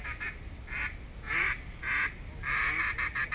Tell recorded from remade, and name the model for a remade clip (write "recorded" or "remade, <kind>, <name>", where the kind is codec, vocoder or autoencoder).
recorded